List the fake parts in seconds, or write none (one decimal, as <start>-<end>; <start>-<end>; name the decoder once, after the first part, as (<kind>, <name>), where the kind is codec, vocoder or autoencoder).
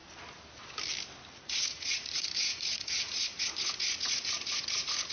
1.4-5.1 (vocoder, Vocos)